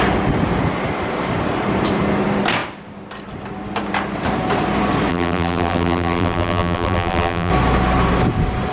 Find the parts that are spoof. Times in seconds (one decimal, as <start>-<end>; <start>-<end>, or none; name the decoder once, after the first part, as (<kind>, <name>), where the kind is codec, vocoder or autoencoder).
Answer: 5.1-7.5 (vocoder, BigVGAN v2)